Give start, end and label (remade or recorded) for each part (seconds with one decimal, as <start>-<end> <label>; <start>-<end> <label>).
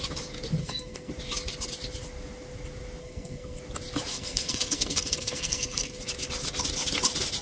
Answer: 0.0-0.6 recorded; 0.6-1.1 remade; 1.1-3.0 recorded; 3.0-3.6 remade; 3.6-4.1 recorded; 4.1-6.0 remade; 6.0-7.4 recorded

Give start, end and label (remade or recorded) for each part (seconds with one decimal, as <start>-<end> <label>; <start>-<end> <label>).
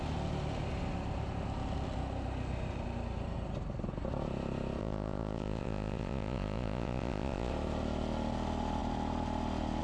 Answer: 0.0-4.8 recorded; 4.8-7.5 remade; 7.5-9.8 recorded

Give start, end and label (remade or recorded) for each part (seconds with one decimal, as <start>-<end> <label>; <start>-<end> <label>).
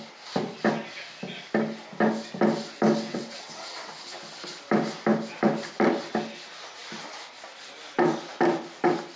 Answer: 0.0-3.1 recorded; 3.1-3.9 remade; 3.9-9.2 recorded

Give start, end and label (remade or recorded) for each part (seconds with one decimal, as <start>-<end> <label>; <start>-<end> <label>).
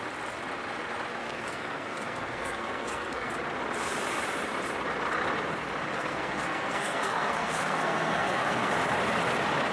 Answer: 0.0-1.2 recorded; 1.2-3.3 remade; 3.3-5.9 recorded; 5.9-8.7 remade; 8.7-9.7 recorded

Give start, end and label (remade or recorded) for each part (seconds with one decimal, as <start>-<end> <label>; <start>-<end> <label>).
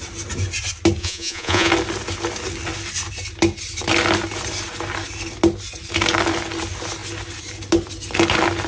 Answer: 0.0-1.0 recorded; 1.0-1.7 remade; 1.7-8.7 recorded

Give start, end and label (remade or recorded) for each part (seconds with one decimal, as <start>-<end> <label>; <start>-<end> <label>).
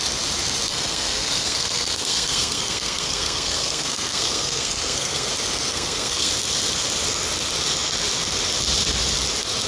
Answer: 0.0-0.7 recorded; 0.7-5.3 remade; 5.3-5.7 recorded; 5.7-6.3 remade; 6.3-9.7 recorded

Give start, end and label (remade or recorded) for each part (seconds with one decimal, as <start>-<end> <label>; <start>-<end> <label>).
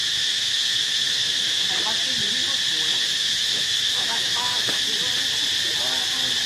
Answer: 0.0-1.7 remade; 1.7-2.9 recorded; 2.9-4.8 remade; 4.8-6.5 recorded